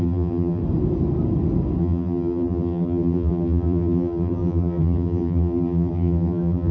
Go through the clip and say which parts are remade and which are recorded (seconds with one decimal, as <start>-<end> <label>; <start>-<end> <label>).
0.0-0.6 remade; 0.6-1.8 recorded; 1.8-6.7 remade